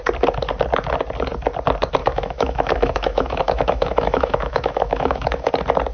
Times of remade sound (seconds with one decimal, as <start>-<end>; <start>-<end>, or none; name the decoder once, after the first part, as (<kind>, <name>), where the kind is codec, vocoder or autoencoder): 2.0-5.5 (autoencoder, DAC-VAE)